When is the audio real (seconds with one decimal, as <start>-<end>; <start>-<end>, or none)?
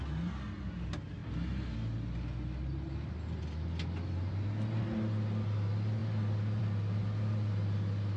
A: 0.0-8.2